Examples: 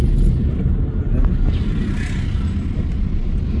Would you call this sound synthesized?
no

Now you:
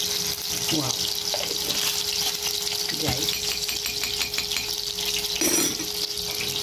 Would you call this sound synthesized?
no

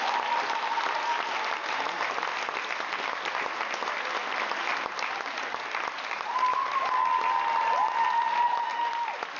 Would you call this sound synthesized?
no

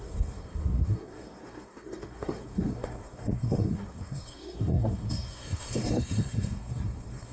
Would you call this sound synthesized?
yes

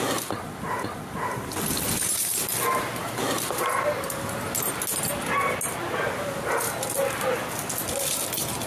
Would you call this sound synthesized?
no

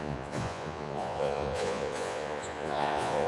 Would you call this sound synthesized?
yes